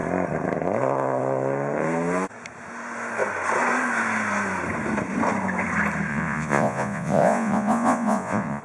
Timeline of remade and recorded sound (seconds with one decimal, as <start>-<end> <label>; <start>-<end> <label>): 0.0-6.1 recorded; 6.1-8.6 remade